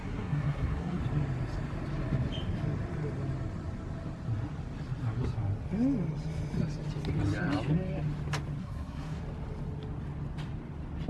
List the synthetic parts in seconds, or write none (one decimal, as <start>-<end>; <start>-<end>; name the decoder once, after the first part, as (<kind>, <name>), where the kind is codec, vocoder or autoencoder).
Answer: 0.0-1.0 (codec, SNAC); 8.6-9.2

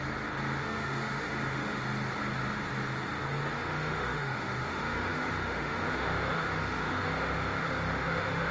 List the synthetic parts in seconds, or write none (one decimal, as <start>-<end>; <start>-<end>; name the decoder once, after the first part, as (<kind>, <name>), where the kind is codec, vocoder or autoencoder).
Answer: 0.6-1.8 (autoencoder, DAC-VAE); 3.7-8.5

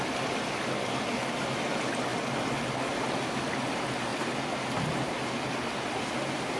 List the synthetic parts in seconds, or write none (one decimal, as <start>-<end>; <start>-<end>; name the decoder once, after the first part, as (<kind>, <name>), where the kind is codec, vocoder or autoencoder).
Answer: none

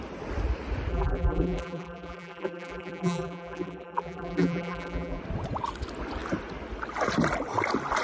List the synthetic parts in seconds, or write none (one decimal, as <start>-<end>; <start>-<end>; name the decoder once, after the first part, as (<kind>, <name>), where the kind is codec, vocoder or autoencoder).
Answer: 0.9-5.2 (vocoder, BigVGAN v2)